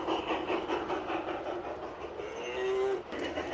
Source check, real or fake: real